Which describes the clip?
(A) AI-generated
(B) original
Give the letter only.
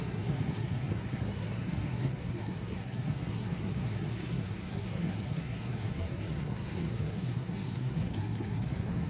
A